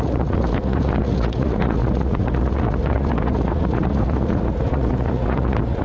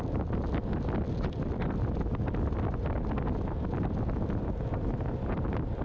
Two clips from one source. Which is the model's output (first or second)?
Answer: first